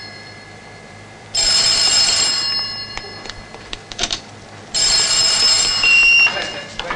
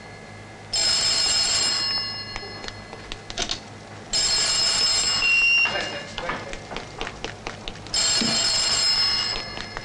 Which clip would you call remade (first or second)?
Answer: first